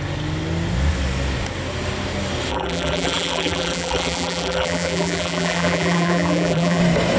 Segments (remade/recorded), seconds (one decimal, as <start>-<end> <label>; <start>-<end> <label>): 0.0-2.5 recorded; 2.5-6.8 remade; 6.8-7.2 recorded